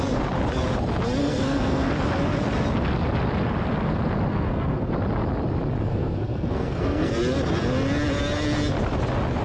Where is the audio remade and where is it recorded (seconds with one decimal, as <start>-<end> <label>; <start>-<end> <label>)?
0.0-1.2 recorded; 1.2-1.9 remade; 1.9-4.3 recorded; 4.3-4.9 remade; 4.9-5.9 recorded; 5.9-7.1 remade; 7.1-9.4 recorded